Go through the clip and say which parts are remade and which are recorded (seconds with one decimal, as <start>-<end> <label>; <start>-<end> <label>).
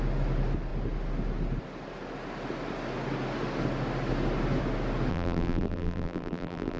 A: 0.0-5.1 recorded; 5.1-6.8 remade